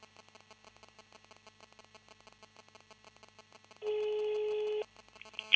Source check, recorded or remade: recorded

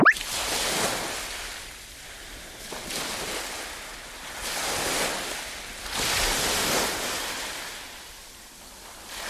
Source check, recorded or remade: recorded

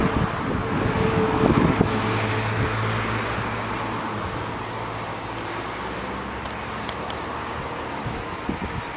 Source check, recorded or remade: recorded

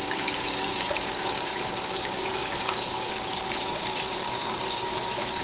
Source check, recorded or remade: remade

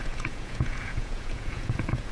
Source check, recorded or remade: remade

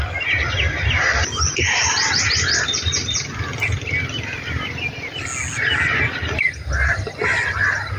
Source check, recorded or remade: recorded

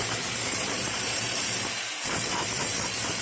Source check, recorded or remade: remade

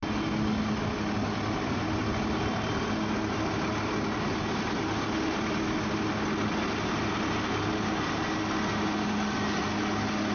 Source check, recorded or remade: recorded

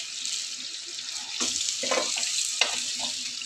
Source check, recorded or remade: recorded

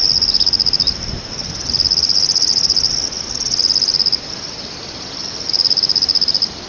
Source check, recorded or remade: recorded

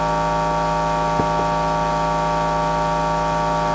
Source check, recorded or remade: recorded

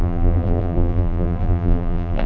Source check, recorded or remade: remade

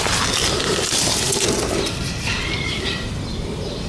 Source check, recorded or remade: recorded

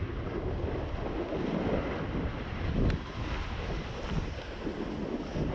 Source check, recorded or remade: recorded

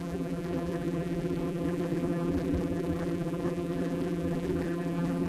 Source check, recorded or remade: remade